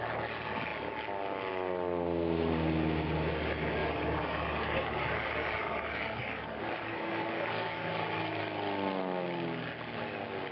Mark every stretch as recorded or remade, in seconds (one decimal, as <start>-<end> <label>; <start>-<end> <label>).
0.0-3.8 recorded; 3.8-7.9 remade; 7.9-10.5 recorded